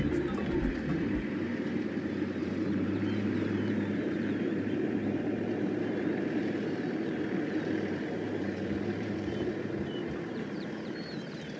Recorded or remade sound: remade